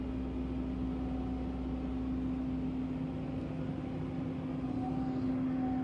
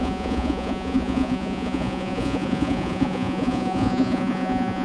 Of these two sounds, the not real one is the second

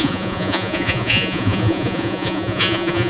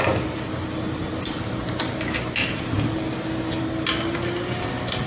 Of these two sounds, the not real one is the first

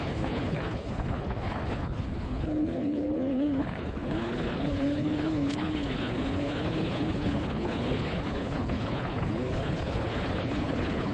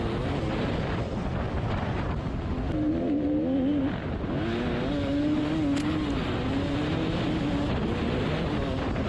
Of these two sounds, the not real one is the first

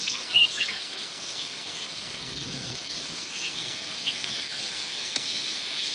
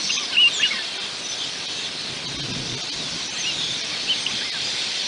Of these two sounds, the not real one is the first